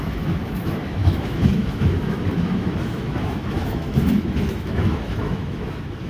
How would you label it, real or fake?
fake